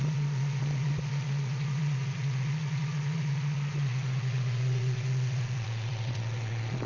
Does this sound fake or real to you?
fake